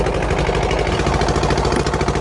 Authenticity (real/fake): real